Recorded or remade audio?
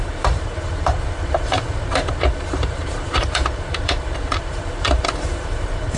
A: remade